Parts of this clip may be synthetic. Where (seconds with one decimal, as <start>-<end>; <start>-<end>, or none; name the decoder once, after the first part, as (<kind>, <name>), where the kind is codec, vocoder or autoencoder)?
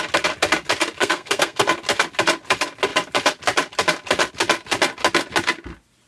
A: 1.0-1.6 (codec, SNAC)